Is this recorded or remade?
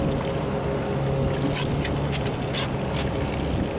recorded